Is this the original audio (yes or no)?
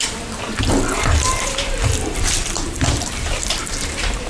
no